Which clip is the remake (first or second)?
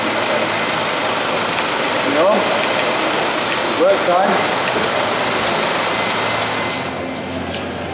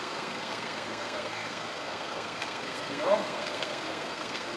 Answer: second